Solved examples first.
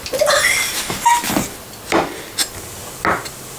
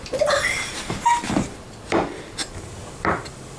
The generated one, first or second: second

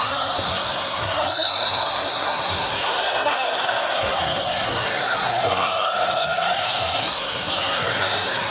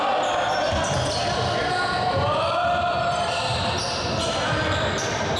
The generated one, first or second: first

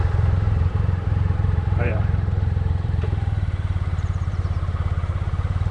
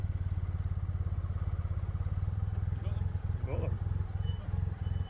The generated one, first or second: first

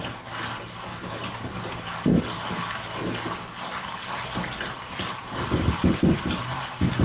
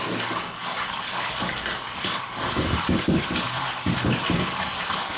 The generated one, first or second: second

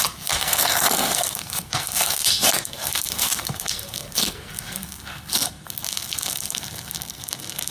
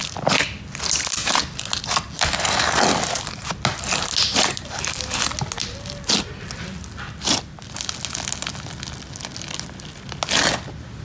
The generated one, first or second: first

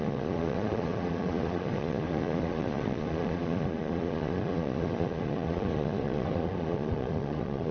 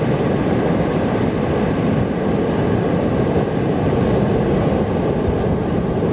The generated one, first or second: first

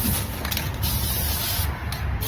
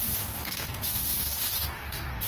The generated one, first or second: second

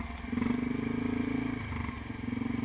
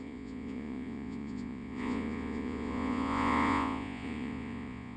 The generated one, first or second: second